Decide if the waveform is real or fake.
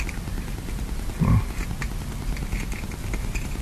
real